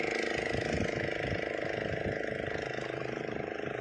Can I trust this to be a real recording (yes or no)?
yes